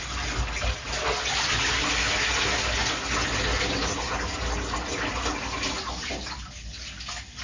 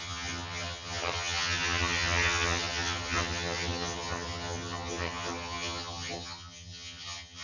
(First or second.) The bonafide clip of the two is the first